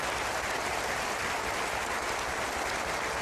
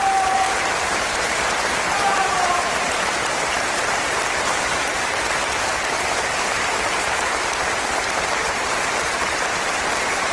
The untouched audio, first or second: first